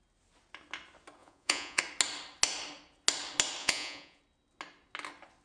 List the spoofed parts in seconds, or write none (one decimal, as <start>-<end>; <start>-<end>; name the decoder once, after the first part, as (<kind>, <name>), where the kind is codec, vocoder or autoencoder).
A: 1.2-1.8 (vocoder, Vocos); 3.6-4.2